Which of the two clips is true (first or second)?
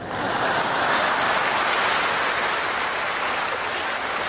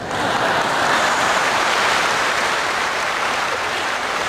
first